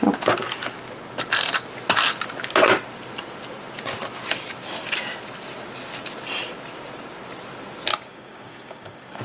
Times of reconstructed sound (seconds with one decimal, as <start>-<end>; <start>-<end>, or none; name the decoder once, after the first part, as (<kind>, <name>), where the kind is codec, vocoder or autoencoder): 7.9-9.2 (codec, DAC)